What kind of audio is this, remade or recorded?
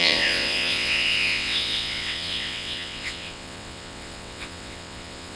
remade